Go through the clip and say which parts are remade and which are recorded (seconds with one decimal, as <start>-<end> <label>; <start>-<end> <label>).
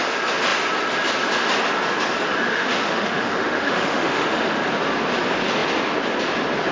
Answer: 0.0-2.5 recorded; 2.5-4.6 remade; 4.6-6.7 recorded